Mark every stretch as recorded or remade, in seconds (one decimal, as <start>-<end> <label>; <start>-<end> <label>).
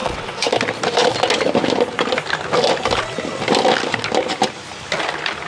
0.0-0.5 remade; 0.5-5.5 recorded